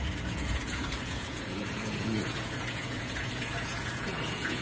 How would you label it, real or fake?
fake